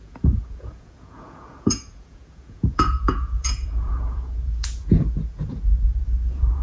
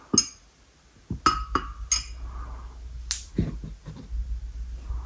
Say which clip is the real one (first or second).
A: second